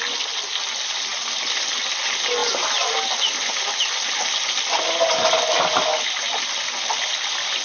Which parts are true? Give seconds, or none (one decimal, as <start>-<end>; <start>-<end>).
0.0-7.6